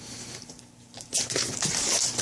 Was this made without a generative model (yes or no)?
no